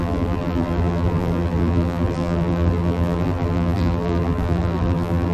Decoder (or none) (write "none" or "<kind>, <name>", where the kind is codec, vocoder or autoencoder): vocoder, BigVGAN v2